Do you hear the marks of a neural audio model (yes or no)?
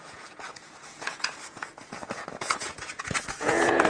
yes